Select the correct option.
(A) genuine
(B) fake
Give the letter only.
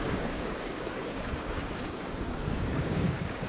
B